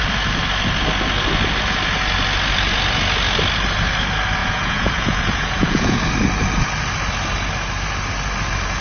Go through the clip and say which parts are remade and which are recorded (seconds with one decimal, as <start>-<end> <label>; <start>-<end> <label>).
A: 0.0-4.4 recorded; 4.4-6.0 remade; 6.0-8.8 recorded